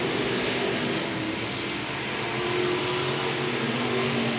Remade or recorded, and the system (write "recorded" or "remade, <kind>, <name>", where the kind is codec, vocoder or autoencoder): recorded